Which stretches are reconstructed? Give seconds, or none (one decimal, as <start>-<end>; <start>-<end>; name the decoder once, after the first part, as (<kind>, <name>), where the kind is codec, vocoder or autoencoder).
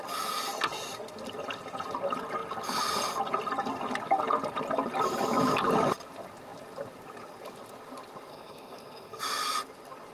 8.3-9.2 (codec, SNAC)